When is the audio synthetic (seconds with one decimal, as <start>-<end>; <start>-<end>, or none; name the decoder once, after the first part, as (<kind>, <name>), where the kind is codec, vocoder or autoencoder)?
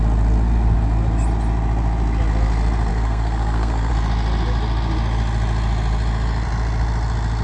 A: 2.9-3.9 (codec, SNAC)